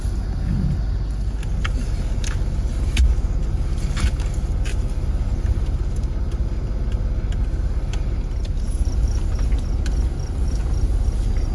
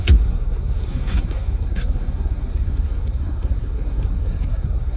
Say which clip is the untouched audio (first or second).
first